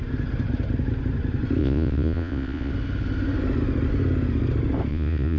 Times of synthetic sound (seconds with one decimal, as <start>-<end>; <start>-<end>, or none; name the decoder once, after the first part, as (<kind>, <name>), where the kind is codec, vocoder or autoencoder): 1.6-2.7 (vocoder, Vocos); 4.9-5.4